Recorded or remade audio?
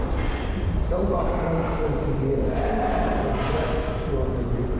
recorded